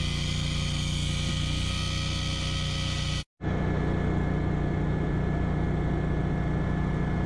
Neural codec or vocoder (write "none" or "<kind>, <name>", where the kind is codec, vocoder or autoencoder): none